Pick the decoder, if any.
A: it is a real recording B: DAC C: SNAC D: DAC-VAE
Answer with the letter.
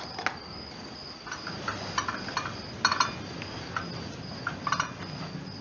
A